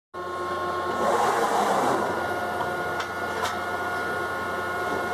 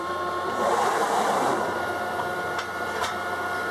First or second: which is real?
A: first